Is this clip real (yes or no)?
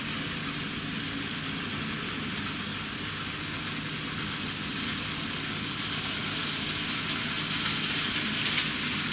yes